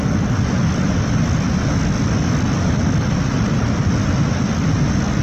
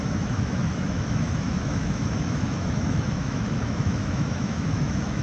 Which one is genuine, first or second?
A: first